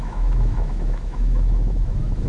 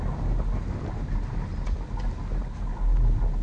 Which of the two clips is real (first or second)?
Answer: second